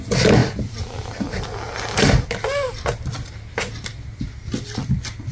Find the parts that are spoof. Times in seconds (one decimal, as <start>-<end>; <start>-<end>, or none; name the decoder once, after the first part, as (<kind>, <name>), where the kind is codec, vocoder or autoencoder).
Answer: none